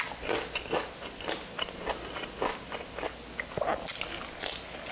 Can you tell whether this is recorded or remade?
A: recorded